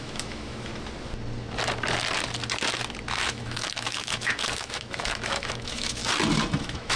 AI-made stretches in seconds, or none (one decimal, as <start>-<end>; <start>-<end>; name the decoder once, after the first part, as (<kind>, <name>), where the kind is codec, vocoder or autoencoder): 0.0-0.7 (autoencoder, DAC-VAE); 3.1-6.0; 6.6-7.0

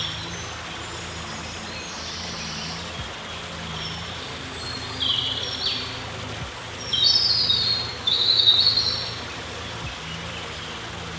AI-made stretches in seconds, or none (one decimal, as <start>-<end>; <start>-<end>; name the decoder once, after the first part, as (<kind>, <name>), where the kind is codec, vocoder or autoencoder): 7.9-8.5 (autoencoder, DAC-VAE)

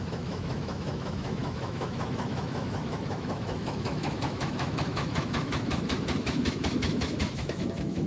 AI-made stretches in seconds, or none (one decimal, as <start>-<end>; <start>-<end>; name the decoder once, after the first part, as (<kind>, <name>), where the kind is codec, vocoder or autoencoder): 0.0-8.1 (autoencoder, DAC-VAE)

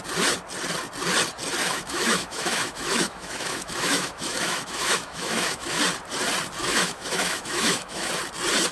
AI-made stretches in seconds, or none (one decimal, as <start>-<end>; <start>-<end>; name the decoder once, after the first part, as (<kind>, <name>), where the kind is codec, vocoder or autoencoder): 1.6-5.8 (autoencoder, DAC-VAE); 6.6-8.1

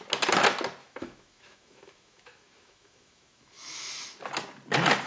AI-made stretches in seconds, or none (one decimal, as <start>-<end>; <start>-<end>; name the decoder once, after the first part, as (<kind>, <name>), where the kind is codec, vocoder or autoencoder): 0.8-3.9 (autoencoder, DAC-VAE)

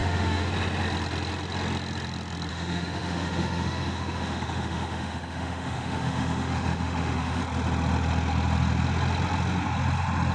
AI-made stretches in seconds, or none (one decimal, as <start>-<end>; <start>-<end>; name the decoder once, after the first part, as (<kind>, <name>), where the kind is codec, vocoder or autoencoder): 0.0-0.5 (autoencoder, DAC-VAE); 2.5-7.4

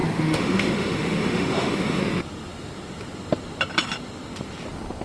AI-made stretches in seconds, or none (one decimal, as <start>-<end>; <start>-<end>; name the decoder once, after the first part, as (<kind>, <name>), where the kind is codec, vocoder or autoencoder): 0.0-2.0 (autoencoder, DAC-VAE)

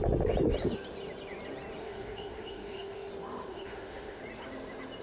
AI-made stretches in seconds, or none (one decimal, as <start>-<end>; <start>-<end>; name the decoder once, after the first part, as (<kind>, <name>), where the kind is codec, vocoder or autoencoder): 1.8-3.1 (autoencoder, DAC-VAE); 3.5-4.2